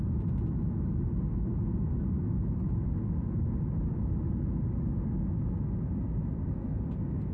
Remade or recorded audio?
recorded